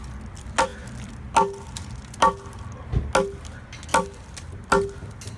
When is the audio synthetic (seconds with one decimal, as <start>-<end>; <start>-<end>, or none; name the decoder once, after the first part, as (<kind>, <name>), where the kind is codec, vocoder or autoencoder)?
none

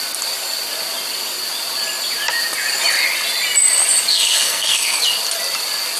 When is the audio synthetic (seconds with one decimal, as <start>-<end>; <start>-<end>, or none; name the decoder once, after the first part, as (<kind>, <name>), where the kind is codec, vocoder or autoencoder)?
4.1-5.0 (codec, SNAC)

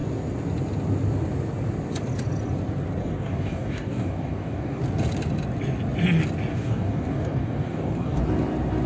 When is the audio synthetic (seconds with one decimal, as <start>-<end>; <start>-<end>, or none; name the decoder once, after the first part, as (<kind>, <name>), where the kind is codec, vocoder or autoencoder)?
3.0-4.8 (codec, DAC); 6.5-8.2

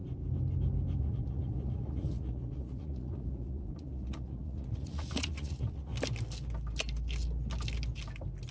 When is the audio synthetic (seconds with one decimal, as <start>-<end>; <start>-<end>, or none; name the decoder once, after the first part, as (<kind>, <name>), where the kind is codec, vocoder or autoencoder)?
1.0-5.9 (vocoder, Vocos)

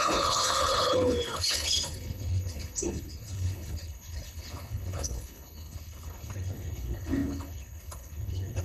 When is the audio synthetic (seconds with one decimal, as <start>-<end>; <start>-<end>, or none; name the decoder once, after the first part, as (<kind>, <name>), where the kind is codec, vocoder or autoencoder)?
0.0-8.6 (codec, HILCodec)

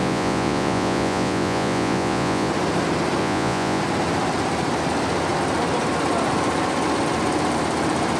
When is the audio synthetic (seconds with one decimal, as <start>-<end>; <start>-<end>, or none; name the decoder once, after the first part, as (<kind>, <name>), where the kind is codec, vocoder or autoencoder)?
0.0-2.5 (vocoder, Vocos); 3.2-3.8